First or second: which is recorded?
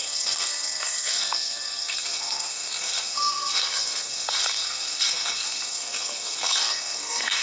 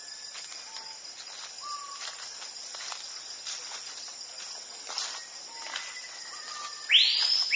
second